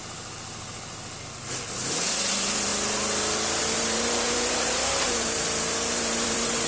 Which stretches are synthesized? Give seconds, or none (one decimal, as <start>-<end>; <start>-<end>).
2.1-2.7; 3.6-6.7